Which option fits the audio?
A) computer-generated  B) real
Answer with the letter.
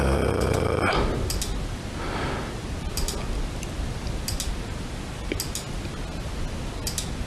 B